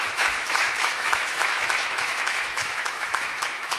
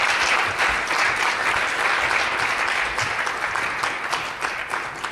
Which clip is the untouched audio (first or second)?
second